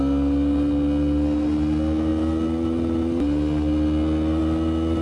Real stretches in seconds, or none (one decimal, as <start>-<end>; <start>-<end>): 0.0-5.0